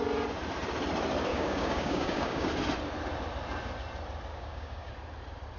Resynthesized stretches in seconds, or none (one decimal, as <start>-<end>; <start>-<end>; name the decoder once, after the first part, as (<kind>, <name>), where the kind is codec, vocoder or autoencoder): 1.3-2.5 (codec, DAC); 4.3-4.9